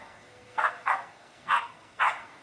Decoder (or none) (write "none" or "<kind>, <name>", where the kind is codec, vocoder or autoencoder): codec, SNAC